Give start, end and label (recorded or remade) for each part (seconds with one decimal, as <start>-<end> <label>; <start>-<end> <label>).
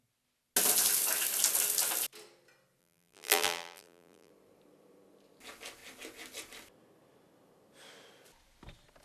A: 0.0-2.8 recorded; 2.8-4.3 remade; 4.3-9.0 recorded